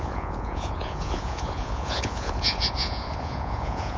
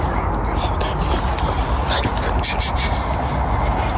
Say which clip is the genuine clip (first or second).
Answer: second